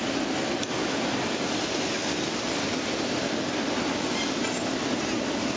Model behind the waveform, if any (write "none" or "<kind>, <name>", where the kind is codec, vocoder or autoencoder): none